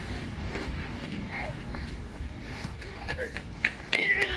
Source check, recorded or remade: remade